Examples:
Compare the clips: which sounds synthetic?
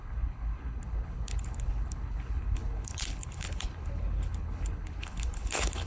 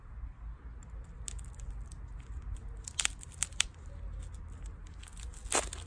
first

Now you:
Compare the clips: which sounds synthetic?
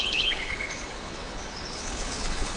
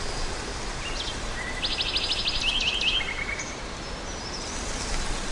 first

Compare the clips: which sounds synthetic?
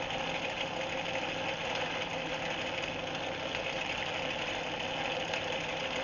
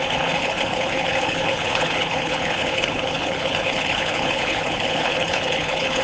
second